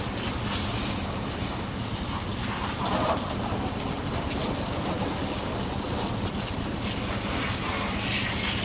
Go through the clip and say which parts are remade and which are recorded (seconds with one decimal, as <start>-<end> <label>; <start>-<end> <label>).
0.0-8.6 recorded